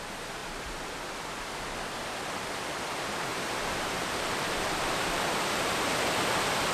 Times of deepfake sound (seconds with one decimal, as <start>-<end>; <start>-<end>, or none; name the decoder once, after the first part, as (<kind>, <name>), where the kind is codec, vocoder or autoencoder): 3.3-5.9 (vocoder, BigVGAN v2)